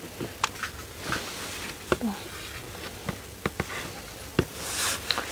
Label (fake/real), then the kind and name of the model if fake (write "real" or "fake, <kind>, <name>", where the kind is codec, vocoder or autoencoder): real